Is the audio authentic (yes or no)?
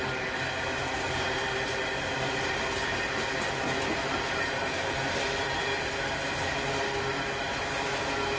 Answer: yes